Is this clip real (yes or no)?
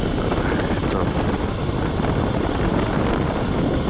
yes